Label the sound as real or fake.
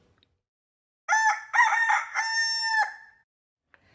real